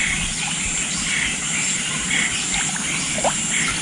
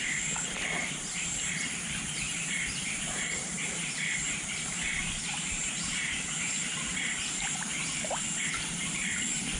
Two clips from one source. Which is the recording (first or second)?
first